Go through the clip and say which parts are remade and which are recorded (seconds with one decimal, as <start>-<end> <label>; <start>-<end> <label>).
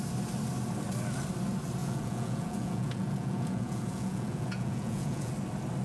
0.0-1.8 recorded; 1.8-5.3 remade; 5.3-5.8 recorded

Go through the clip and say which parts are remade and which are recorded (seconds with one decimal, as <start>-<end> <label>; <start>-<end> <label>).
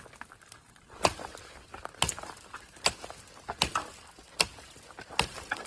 0.0-5.7 recorded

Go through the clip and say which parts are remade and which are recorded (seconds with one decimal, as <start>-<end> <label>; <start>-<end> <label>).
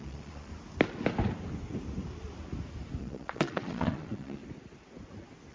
0.0-0.5 remade; 0.5-3.0 recorded; 3.0-4.4 remade; 4.4-5.5 recorded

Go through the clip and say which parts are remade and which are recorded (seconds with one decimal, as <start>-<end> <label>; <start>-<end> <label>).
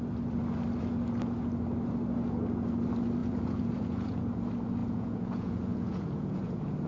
0.0-3.2 recorded; 3.2-4.3 remade; 4.3-4.8 recorded; 4.8-6.9 remade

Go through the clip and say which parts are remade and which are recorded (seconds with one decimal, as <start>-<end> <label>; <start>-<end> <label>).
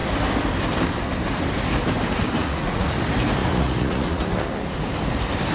0.0-2.4 recorded; 2.4-2.9 remade; 2.9-3.4 recorded; 3.4-4.2 remade; 4.2-5.5 recorded